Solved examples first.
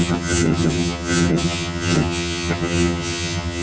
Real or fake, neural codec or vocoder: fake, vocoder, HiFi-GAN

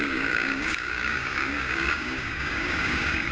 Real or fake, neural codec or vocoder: fake, codec, DAC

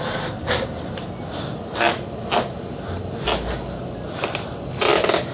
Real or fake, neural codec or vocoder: real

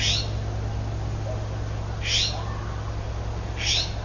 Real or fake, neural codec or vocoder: real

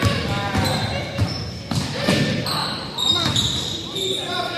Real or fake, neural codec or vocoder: fake, vocoder, BigVGAN v2